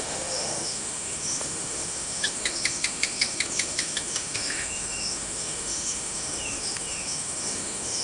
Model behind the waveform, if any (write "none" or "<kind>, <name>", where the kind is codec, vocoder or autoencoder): autoencoder, DAC-VAE